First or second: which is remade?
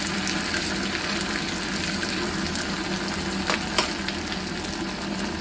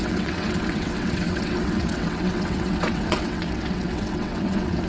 second